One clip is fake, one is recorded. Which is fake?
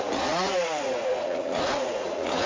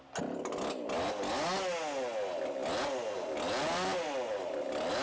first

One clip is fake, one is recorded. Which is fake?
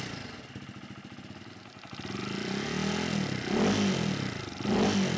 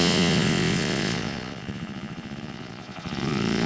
second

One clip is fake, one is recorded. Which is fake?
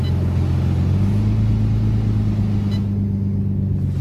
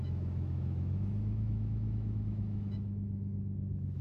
second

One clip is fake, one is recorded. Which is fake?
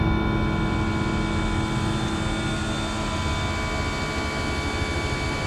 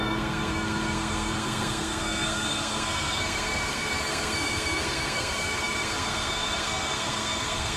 second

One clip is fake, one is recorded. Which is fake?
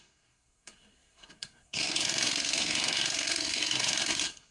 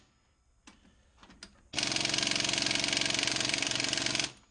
first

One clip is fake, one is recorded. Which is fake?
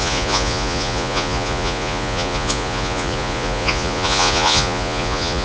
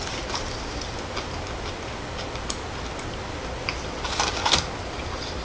first